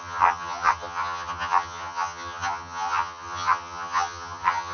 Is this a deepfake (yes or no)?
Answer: yes